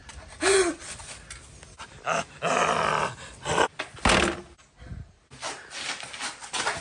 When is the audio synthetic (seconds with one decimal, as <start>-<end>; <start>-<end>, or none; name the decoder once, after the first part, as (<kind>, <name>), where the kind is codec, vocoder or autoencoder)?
none